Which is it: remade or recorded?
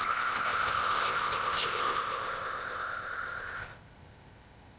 remade